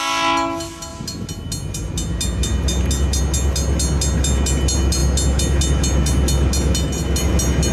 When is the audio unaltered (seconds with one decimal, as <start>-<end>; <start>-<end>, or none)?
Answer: 0.0-7.7